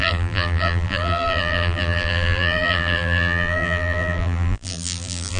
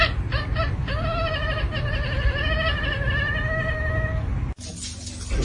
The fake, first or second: first